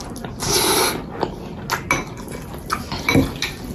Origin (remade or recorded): recorded